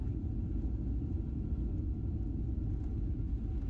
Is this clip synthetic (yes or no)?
no